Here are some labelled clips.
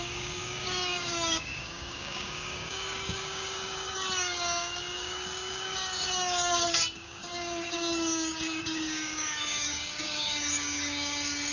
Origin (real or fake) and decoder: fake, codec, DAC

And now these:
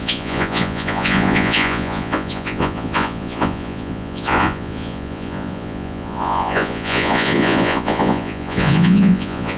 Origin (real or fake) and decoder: fake, vocoder, Vocos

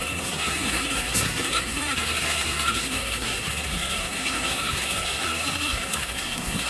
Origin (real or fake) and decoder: fake, codec, SNAC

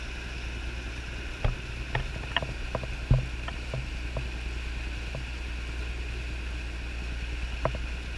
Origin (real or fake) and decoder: real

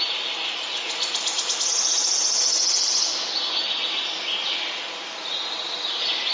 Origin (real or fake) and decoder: real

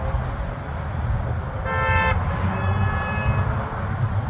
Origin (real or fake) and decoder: real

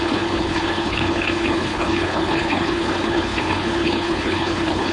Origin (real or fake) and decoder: fake, codec, HILCodec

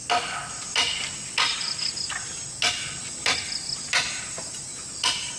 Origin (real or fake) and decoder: real